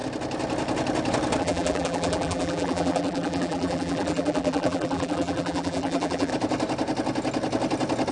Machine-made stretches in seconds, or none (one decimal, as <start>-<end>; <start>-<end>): 1.4-6.3